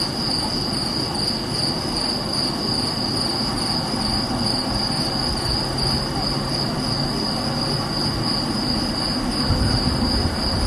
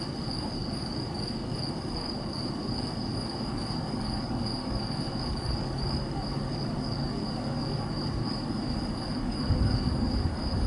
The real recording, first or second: first